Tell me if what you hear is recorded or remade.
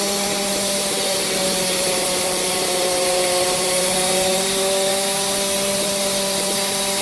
remade